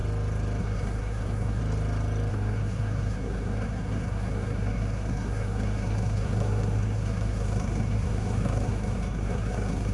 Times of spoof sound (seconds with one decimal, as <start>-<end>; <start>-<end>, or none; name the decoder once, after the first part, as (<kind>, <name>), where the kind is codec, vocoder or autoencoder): 0.6-1.6 (codec, SNAC); 2.3-9.9